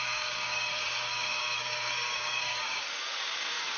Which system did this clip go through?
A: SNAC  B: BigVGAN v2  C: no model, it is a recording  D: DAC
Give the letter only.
D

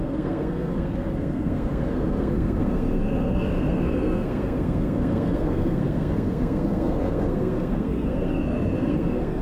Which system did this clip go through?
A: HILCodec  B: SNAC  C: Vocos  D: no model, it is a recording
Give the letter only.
B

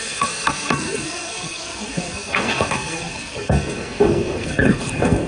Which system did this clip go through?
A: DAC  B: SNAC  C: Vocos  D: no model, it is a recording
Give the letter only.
B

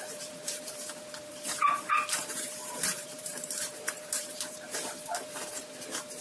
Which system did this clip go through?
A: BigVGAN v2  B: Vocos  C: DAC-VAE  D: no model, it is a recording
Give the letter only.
A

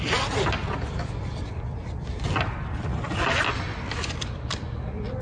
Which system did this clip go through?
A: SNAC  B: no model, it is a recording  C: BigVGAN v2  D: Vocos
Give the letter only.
C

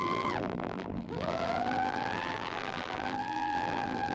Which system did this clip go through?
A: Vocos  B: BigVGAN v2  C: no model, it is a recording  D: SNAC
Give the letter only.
B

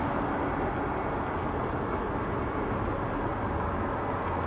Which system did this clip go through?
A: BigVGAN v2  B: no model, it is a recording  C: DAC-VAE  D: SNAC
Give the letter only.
B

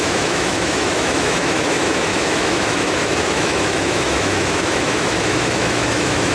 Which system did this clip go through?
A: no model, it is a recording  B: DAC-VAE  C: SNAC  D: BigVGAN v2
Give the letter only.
B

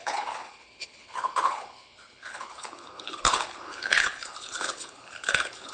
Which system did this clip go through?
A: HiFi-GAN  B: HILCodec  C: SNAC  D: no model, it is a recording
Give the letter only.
B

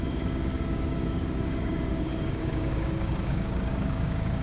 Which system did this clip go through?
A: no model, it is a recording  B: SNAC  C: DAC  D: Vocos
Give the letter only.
C